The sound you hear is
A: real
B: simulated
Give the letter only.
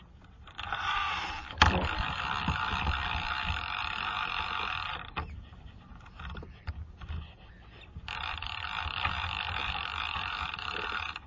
A